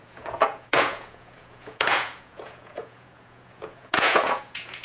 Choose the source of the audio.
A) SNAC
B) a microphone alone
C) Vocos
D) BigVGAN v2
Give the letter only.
C